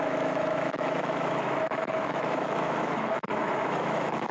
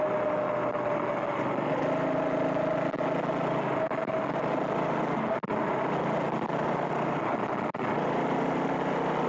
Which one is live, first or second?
second